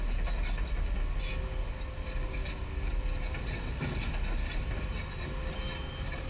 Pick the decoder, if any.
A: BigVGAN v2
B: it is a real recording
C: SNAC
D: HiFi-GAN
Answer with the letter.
B